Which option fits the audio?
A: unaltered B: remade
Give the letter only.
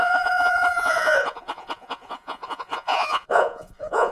B